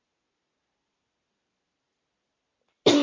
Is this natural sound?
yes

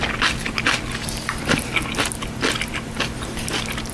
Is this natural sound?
yes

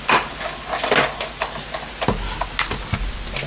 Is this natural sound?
yes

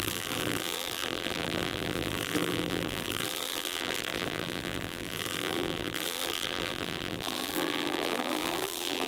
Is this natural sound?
no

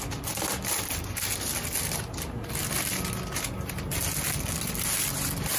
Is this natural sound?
yes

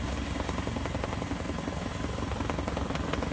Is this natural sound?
yes